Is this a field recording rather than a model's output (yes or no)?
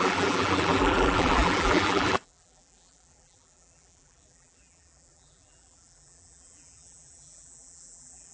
no